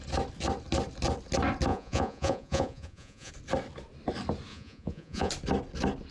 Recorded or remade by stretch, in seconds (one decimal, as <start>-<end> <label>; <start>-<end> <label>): 0.0-1.7 recorded; 1.7-3.3 remade; 3.3-4.5 recorded; 4.5-5.3 remade; 5.3-6.1 recorded